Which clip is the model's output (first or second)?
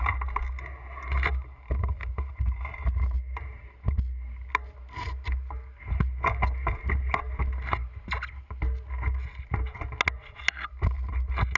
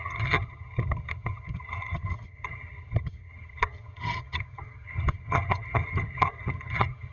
second